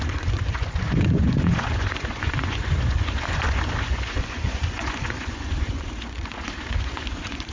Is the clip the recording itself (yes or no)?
no